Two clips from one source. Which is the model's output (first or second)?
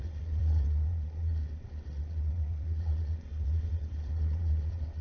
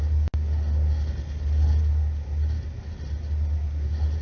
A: first